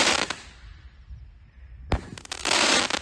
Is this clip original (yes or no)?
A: yes